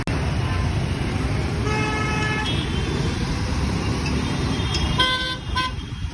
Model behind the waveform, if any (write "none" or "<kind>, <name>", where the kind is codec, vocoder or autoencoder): none